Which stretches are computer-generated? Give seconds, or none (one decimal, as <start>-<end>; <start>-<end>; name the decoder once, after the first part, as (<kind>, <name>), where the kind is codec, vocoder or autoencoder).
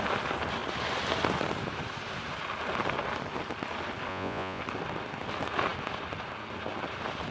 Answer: 4.1-4.6 (vocoder, Vocos)